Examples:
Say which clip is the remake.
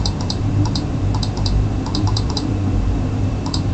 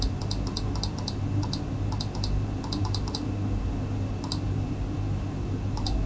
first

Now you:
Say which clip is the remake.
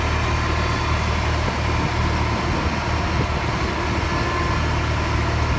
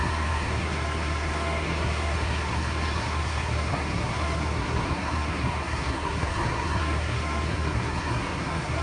second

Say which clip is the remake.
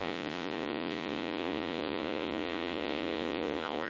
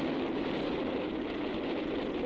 first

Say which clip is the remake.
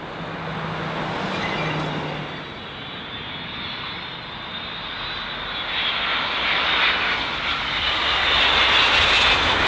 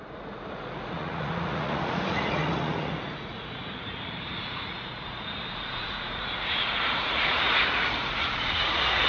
second